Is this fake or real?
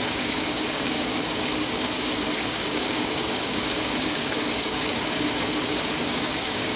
fake